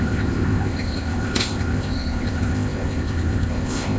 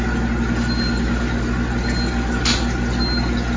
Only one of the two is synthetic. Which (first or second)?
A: first